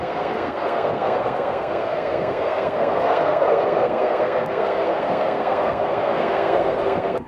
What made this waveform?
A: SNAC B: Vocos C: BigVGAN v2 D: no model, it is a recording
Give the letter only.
A